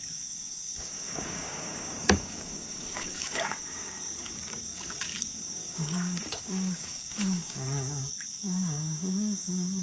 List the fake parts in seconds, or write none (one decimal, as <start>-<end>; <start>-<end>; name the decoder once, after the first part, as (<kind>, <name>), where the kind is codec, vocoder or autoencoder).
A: 0.0-9.8 (codec, DAC)